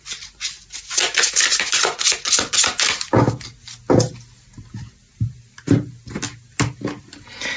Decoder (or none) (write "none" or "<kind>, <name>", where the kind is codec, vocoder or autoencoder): none